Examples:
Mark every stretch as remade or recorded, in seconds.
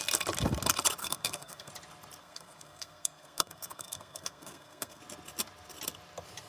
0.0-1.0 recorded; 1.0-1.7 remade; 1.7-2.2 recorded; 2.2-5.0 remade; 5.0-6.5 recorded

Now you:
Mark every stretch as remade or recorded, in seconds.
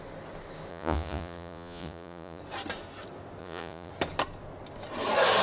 0.0-0.7 recorded; 0.7-2.4 remade; 2.4-3.4 recorded; 3.4-3.9 remade; 3.9-5.4 recorded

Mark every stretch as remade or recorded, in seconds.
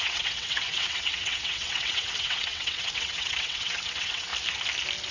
0.0-4.3 remade; 4.3-5.1 recorded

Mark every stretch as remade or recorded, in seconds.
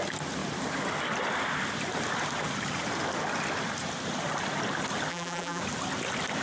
0.0-5.1 recorded; 5.1-5.6 remade; 5.6-6.4 recorded